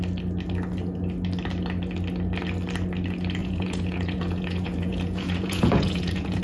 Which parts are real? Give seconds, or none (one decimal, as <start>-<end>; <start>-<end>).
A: 0.0-3.4